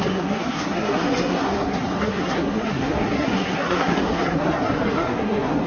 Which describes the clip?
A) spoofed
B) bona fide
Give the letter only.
A